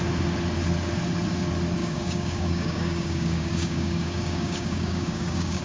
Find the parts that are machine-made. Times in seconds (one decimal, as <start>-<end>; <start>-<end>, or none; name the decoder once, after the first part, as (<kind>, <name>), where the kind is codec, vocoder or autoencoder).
1.8-5.6 (codec, DAC)